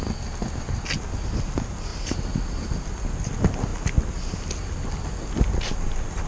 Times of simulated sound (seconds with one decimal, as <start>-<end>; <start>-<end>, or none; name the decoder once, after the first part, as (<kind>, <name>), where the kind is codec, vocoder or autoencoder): none